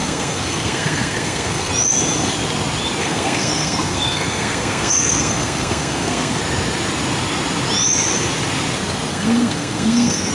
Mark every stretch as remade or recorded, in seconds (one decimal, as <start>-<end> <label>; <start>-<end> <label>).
0.0-1.7 remade; 1.7-3.0 recorded; 3.0-6.4 remade; 6.4-9.1 recorded; 9.1-10.3 remade